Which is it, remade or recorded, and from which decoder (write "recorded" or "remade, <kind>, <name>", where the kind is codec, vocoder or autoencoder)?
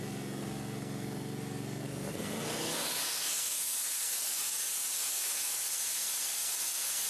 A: remade, codec, SNAC